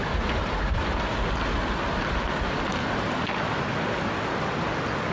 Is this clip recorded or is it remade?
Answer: recorded